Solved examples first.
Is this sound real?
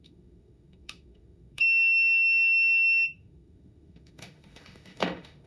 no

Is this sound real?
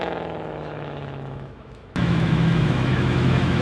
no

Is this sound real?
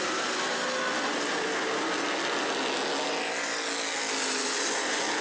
yes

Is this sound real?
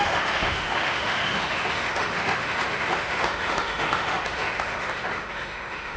no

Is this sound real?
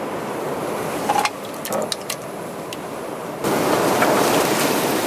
yes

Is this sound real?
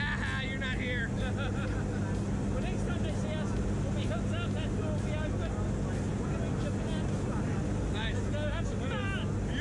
yes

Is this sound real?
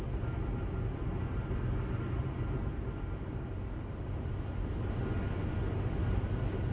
yes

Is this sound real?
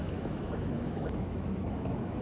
no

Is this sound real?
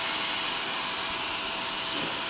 yes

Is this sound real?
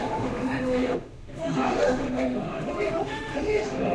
no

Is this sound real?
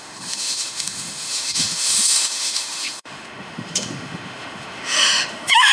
no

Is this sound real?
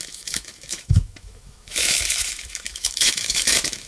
no